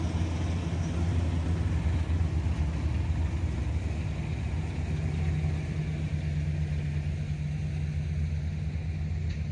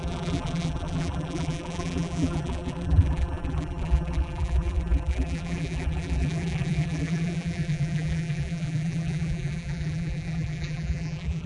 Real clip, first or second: first